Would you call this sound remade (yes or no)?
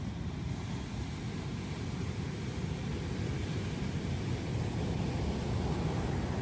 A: no